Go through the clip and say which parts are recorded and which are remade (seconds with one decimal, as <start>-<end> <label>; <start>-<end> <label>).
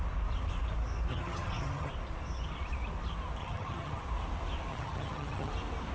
0.0-1.1 recorded; 1.1-1.9 remade; 1.9-3.4 recorded; 3.4-4.0 remade; 4.0-4.7 recorded; 4.7-5.5 remade; 5.5-5.9 recorded